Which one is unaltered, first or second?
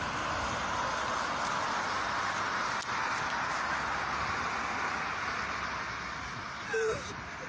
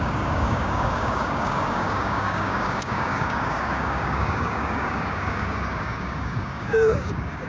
first